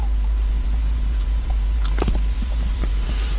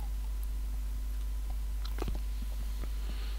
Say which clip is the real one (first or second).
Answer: second